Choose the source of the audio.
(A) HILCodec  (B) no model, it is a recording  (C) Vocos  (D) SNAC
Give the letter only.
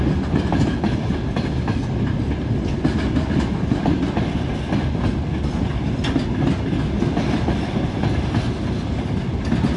B